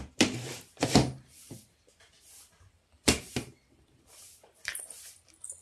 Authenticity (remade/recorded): remade